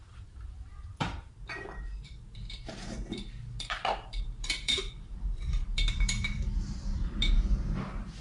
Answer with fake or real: fake